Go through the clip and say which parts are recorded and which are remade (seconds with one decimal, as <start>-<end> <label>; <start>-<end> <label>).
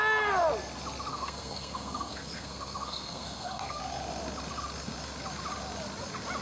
0.0-1.1 recorded; 1.1-3.8 remade; 3.8-6.4 recorded